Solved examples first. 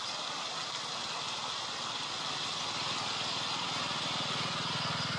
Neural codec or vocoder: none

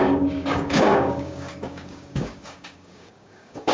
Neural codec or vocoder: codec, DAC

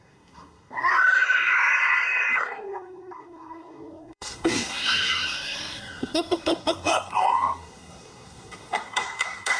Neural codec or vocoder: codec, SNAC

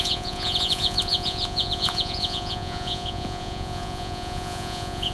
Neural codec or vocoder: vocoder, Vocos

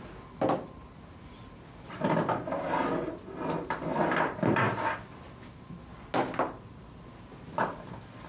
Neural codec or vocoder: none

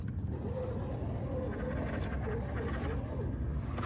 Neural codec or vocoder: none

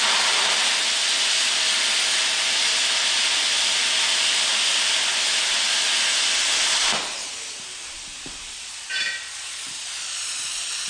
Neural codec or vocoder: none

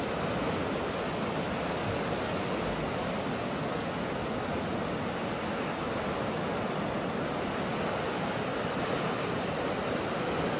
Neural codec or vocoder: none